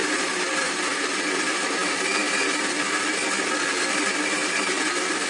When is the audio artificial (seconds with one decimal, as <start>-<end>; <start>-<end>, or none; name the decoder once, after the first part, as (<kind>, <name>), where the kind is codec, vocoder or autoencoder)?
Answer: none